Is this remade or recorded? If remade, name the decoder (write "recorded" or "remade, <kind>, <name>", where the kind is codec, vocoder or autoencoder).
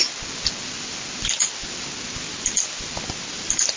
recorded